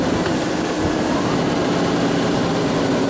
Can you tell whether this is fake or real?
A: real